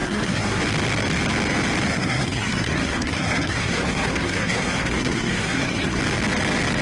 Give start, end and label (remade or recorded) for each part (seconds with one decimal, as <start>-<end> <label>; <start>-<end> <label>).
0.0-0.6 remade; 0.6-1.9 recorded; 1.9-6.0 remade; 6.0-6.8 recorded